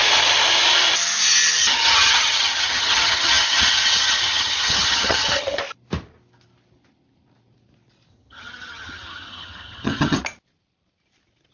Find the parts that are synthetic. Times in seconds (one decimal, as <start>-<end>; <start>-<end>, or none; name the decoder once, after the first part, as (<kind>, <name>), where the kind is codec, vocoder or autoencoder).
1.6-5.6 (vocoder, HiFi-GAN); 8.1-10.2